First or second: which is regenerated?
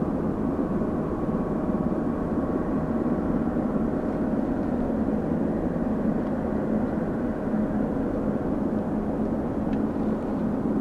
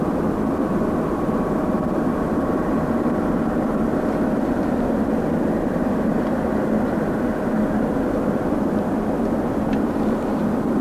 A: second